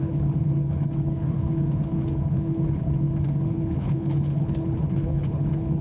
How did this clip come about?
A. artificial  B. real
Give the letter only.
A